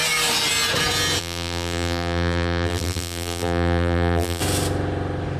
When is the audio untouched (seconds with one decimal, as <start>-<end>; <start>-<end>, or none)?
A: 0.0-1.2; 4.4-5.4